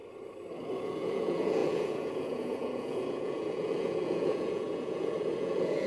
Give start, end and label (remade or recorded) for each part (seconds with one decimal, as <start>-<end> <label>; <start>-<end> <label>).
0.0-0.8 recorded; 0.8-5.9 remade